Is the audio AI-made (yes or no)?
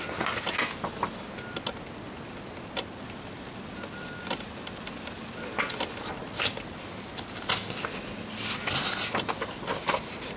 no